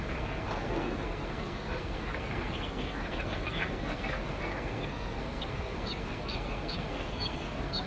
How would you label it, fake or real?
fake